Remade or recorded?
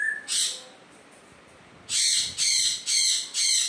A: recorded